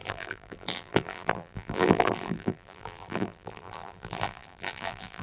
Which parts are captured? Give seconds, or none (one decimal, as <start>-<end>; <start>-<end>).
none